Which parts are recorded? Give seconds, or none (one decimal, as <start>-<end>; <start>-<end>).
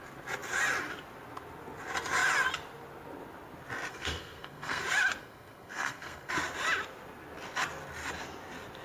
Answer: 0.0-3.9; 4.8-5.2; 6.3-8.8